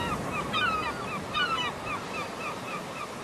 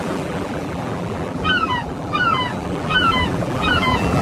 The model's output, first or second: second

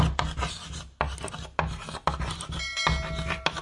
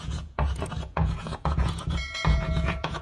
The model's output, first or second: second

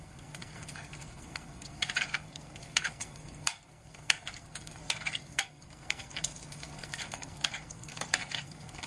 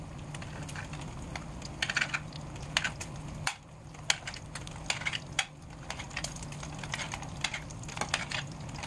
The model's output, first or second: first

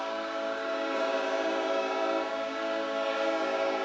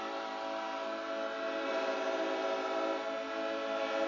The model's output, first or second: first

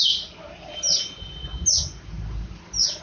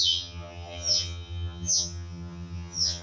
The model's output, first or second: second